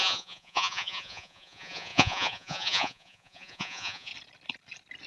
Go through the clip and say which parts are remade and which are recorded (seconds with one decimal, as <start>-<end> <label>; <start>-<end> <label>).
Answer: 0.0-4.1 remade; 4.1-5.1 recorded